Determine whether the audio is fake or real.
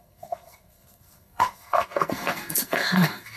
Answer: fake